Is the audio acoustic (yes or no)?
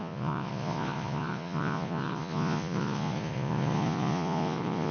no